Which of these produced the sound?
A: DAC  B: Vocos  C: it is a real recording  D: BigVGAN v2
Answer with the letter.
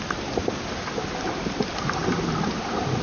C